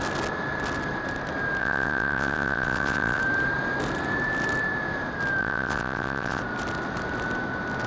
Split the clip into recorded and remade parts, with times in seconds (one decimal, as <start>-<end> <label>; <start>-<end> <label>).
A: 0.0-1.6 recorded; 1.6-3.2 remade; 3.2-5.4 recorded; 5.4-6.4 remade; 6.4-7.9 recorded